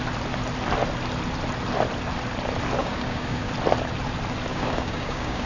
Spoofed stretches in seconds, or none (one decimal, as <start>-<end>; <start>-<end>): 2.8-3.5; 4.5-5.5